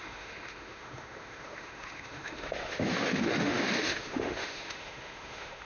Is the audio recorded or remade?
remade